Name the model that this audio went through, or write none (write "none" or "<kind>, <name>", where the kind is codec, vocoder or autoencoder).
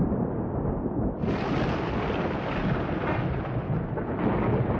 none